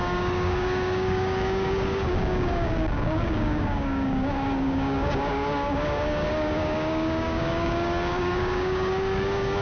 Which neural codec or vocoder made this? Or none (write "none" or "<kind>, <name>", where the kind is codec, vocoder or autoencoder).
codec, DAC